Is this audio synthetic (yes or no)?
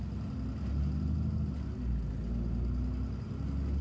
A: no